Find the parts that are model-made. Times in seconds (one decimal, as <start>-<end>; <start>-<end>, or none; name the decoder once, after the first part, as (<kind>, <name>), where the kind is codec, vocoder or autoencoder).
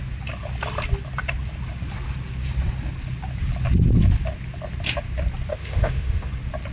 5.5-6.3 (autoencoder, DAC-VAE)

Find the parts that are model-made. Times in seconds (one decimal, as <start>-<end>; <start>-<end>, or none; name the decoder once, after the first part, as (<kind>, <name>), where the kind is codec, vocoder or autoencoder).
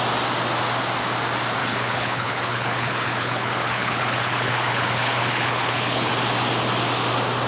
1.6-6.1 (codec, HILCodec)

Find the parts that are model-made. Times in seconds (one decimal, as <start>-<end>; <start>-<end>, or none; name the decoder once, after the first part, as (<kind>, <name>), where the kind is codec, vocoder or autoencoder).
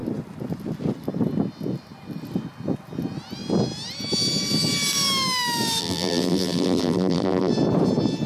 5.8-7.5 (vocoder, BigVGAN v2)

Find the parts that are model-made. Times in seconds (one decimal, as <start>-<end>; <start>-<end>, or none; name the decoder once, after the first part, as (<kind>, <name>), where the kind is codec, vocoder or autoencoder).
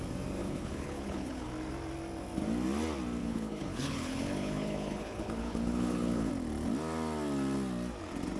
0.4-1.5 (codec, HILCodec); 3.2-6.3